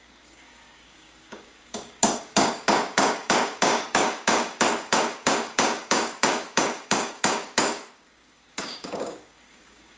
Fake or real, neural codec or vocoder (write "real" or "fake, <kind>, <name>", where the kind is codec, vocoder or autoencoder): fake, codec, DAC